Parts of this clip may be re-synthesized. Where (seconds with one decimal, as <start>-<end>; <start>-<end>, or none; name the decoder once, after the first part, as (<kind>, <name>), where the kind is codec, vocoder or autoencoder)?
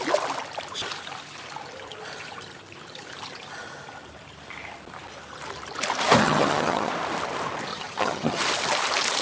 6.2-6.9 (vocoder, HiFi-GAN); 7.7-8.4